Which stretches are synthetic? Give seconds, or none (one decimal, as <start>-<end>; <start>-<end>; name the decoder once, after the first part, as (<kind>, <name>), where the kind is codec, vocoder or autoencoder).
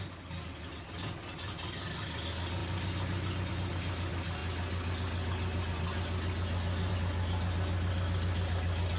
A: none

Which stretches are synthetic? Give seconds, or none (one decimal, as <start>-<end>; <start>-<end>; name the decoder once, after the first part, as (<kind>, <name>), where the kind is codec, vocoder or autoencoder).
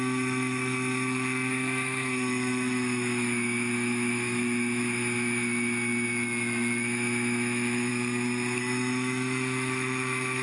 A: 0.0-7.9 (autoencoder, DAC-VAE); 8.6-10.4